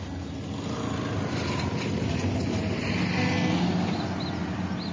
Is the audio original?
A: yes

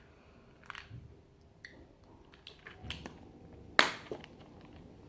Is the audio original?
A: yes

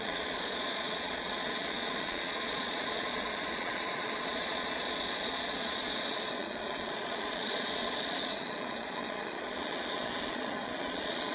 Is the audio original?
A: no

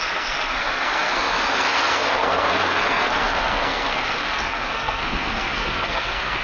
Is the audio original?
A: no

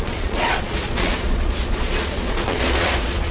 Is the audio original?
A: no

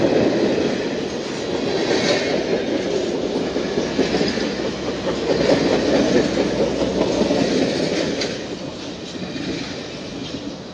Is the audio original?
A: yes